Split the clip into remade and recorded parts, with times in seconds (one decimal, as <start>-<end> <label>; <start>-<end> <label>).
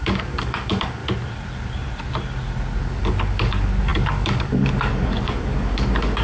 0.0-1.0 remade; 1.0-2.8 recorded; 2.8-6.2 remade